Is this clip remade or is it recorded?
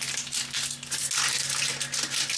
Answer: recorded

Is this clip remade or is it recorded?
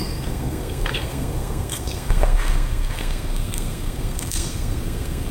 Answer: remade